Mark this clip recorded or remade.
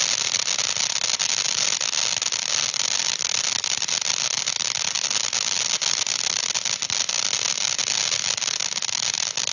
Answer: recorded